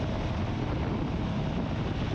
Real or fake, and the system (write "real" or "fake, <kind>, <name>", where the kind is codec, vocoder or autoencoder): real